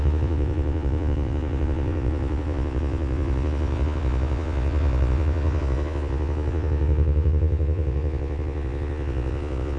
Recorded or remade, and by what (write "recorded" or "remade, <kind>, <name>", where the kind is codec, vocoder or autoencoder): remade, vocoder, Vocos